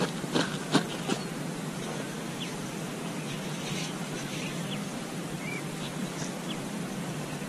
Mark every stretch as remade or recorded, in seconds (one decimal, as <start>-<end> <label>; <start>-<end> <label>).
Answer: 0.0-7.5 recorded